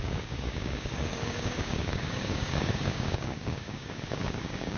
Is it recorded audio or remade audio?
remade